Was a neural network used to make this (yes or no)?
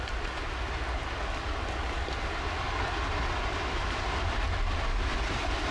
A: no